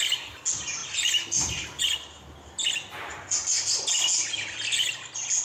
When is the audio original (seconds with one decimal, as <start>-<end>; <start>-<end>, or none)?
0.0-5.4